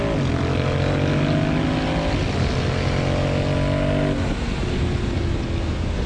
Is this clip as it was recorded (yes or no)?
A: yes